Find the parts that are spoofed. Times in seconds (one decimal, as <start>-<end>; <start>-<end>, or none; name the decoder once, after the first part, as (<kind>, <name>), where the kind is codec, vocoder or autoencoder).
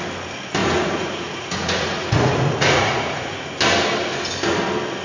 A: 0.6-3.6 (vocoder, Vocos)